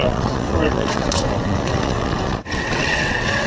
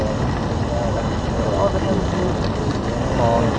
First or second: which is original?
second